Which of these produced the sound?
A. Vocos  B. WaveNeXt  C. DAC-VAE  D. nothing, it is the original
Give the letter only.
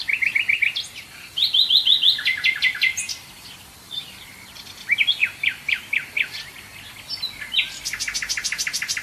D